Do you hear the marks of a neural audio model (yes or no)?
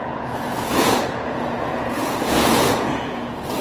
yes